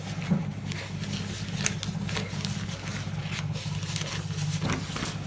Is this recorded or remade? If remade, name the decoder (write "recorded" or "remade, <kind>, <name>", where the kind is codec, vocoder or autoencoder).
recorded